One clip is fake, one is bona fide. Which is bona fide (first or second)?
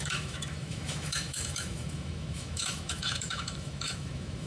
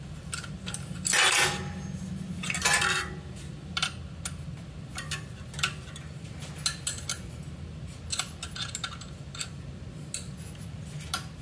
second